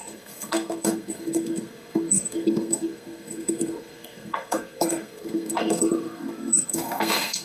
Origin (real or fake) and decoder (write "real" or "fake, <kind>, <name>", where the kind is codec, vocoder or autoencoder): fake, codec, SNAC